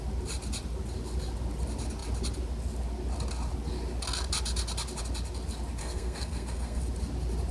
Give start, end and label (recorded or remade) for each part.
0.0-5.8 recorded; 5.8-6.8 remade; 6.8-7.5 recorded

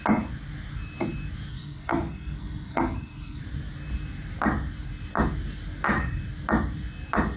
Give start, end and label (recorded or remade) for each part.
0.0-1.5 recorded; 1.5-3.4 remade; 3.4-7.4 recorded

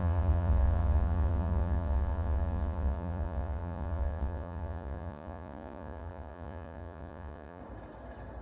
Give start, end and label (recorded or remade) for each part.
0.0-7.6 remade; 7.6-8.4 recorded